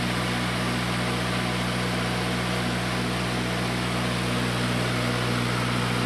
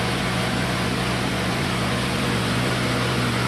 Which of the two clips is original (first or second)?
first